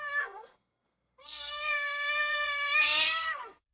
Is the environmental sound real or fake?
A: fake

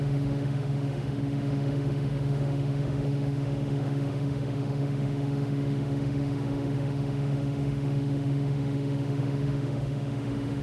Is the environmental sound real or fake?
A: fake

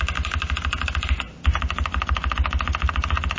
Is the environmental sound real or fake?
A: real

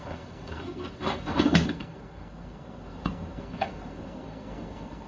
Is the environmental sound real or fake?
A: fake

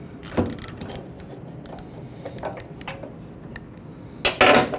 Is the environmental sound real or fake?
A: real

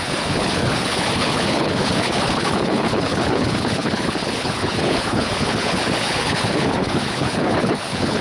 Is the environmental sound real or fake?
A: fake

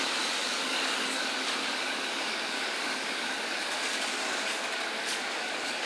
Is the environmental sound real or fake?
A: fake